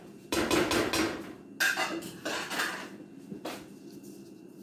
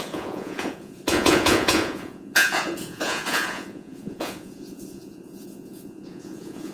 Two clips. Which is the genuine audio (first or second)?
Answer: first